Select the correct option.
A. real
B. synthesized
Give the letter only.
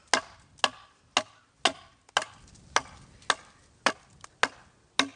A